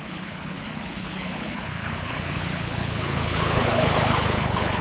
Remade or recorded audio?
remade